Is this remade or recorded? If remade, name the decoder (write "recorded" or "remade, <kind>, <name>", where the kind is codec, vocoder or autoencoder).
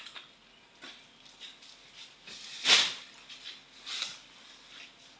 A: recorded